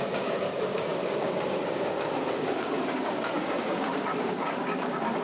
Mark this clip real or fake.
fake